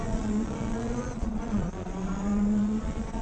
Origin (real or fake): fake